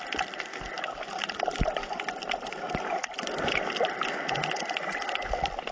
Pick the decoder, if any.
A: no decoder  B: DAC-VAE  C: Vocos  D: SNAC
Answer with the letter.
A